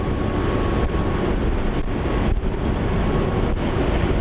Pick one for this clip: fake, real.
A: real